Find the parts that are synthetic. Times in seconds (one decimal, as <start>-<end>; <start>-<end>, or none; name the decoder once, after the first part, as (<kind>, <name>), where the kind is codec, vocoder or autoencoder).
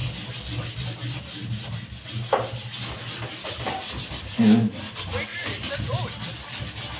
none